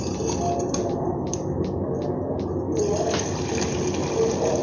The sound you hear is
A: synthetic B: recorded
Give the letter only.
B